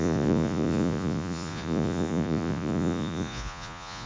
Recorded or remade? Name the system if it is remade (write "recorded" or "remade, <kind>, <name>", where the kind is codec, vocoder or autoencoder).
remade, vocoder, Vocos